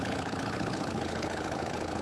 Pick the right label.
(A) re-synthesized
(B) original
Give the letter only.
A